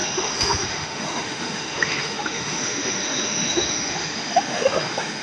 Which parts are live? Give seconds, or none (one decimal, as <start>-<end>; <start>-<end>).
none